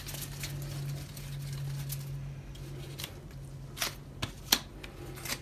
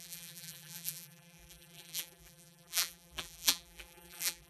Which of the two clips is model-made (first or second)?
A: second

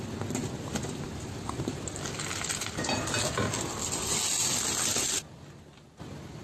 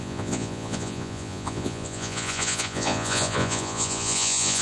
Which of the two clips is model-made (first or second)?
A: second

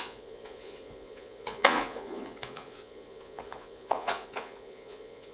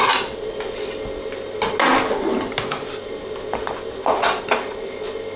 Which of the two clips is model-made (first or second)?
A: first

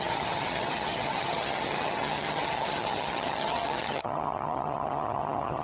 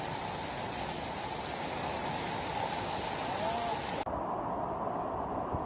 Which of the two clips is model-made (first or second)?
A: first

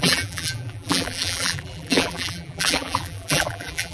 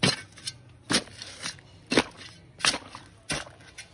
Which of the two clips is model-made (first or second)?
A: first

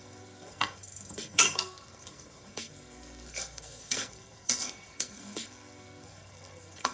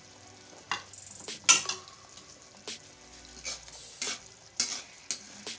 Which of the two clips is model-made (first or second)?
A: first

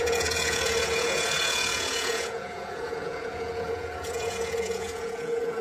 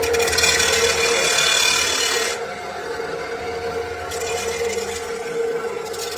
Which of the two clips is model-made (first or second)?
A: first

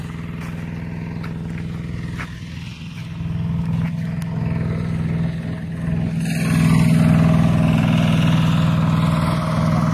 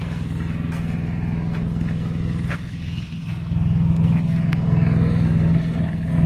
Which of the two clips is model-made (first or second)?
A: second